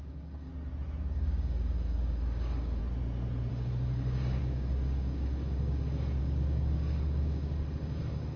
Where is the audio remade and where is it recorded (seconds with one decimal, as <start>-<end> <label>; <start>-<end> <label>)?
0.0-0.5 remade; 0.5-1.1 recorded; 1.1-2.8 remade; 2.8-3.5 recorded; 3.5-8.4 remade